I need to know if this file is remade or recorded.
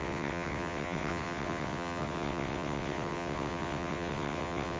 remade